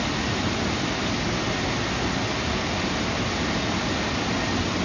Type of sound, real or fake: real